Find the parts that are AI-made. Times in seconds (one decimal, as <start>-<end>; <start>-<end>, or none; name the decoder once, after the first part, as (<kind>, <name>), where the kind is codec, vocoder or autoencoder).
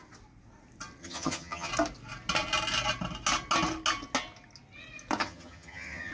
1.0-1.7 (vocoder, HiFi-GAN); 5.2-6.1